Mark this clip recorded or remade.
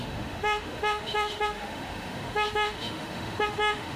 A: remade